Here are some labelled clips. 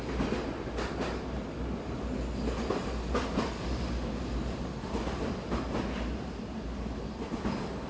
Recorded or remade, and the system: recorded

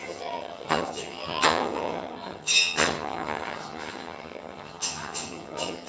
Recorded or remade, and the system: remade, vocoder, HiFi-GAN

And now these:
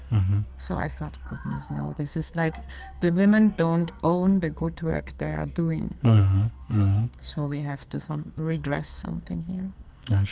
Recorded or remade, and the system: remade, codec, SNAC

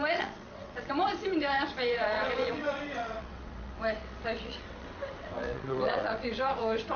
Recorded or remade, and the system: remade, vocoder, WaveNeXt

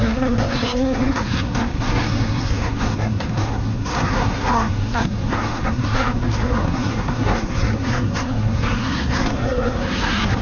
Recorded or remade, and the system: remade, codec, SNAC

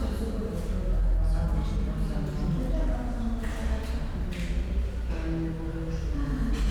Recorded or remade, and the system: recorded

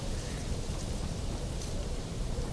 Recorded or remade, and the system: remade, vocoder, BigVGAN v2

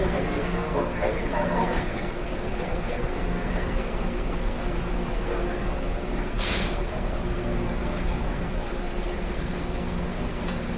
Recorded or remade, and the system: remade, codec, SNAC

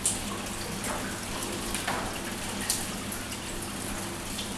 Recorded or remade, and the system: recorded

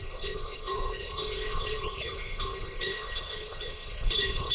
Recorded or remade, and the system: remade, codec, HILCodec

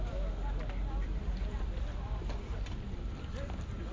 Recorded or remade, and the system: recorded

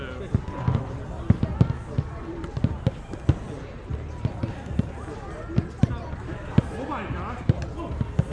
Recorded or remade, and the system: recorded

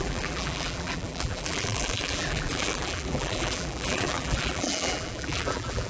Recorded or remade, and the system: remade, vocoder, BigVGAN v2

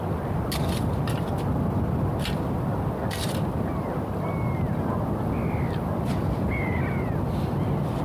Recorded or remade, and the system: recorded